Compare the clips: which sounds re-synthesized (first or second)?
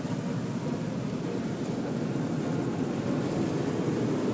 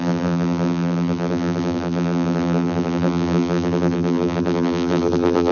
second